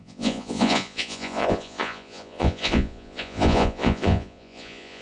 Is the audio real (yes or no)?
no